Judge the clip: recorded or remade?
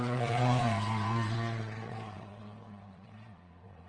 remade